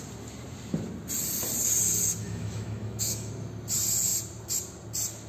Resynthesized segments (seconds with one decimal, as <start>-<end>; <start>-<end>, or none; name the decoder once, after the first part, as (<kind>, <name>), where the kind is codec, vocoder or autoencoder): 2.2-3.3 (autoencoder, DAC-VAE)